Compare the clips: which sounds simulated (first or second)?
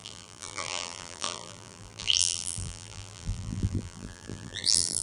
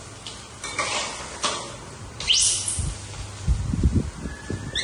first